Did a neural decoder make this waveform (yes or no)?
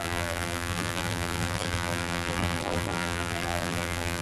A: yes